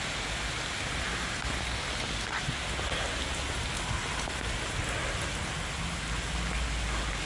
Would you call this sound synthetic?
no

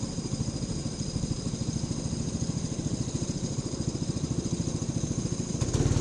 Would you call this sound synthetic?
no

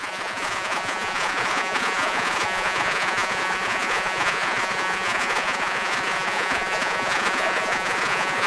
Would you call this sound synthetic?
yes